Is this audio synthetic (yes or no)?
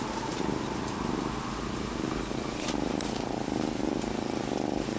no